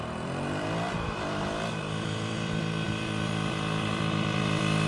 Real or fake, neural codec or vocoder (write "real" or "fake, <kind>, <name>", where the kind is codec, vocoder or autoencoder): fake, vocoder, BigVGAN v2